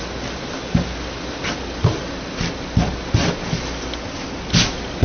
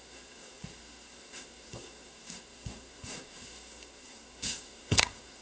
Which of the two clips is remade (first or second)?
second